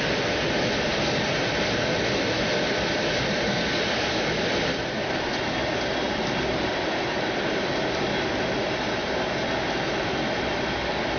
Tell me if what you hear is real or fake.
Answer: real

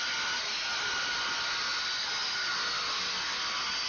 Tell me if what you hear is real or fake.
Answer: real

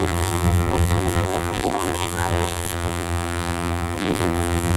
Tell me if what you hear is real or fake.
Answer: fake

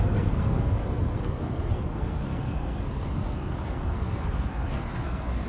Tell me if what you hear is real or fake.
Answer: fake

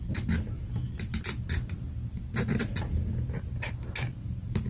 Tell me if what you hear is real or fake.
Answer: real